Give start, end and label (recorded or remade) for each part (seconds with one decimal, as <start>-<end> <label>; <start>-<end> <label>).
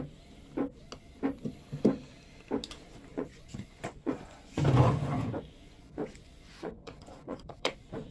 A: 0.0-3.1 recorded; 3.1-8.1 remade